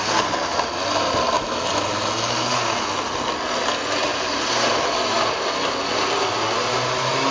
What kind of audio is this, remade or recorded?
recorded